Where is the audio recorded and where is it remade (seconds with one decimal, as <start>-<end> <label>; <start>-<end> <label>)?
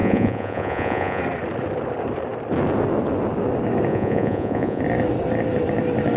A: 0.0-1.2 remade; 1.2-3.9 recorded; 3.9-4.8 remade; 4.8-6.2 recorded